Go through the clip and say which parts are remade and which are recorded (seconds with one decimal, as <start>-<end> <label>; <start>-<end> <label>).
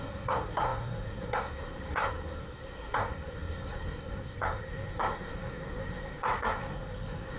0.0-7.4 remade